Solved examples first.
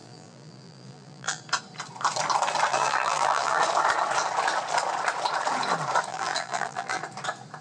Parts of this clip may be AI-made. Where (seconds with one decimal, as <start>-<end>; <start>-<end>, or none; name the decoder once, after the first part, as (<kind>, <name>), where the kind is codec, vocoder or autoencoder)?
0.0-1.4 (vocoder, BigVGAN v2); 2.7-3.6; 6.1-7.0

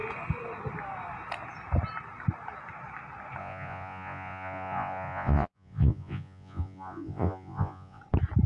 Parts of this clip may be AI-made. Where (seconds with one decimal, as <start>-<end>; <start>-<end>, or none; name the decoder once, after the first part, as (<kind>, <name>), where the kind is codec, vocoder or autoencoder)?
3.4-8.0 (vocoder, Vocos)

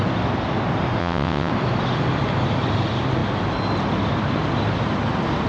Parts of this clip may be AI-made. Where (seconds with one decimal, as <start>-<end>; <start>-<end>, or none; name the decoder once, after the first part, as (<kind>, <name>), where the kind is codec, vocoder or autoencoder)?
1.0-1.5 (vocoder, WaveNeXt)

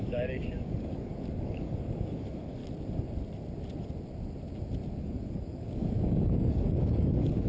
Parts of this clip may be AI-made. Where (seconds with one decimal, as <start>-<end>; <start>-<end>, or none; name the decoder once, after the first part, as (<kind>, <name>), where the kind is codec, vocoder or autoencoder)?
0.0-2.6 (codec, DAC); 5.0-7.5

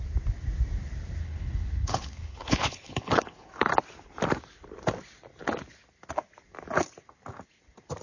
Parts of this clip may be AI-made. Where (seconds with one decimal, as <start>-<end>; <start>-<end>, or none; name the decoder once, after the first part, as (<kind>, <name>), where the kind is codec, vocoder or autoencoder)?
1.2-3.7 (codec, HILCodec)